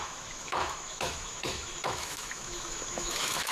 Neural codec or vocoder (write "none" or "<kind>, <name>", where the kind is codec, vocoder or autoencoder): autoencoder, DAC-VAE